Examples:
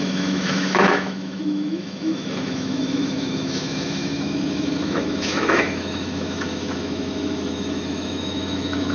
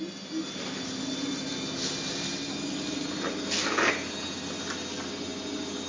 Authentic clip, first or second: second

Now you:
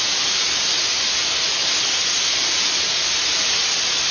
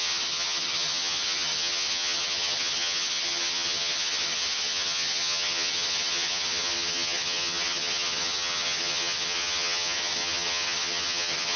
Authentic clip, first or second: first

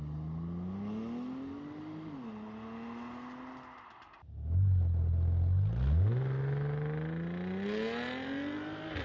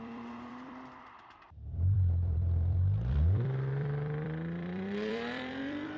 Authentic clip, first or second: first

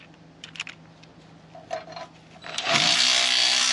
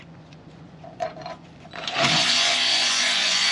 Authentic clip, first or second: first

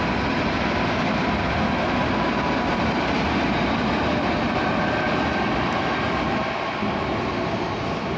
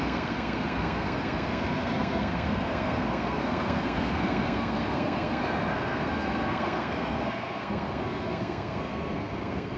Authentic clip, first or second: first